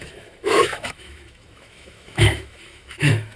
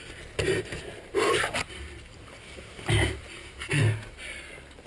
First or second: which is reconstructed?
first